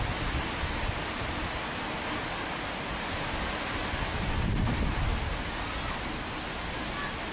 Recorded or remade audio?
recorded